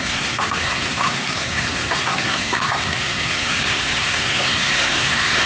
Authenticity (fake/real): fake